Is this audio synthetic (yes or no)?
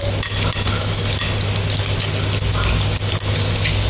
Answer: no